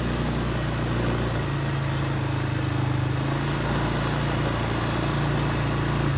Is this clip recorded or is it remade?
recorded